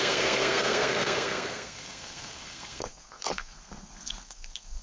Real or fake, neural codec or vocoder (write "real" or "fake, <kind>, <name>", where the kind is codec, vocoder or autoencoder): fake, codec, SNAC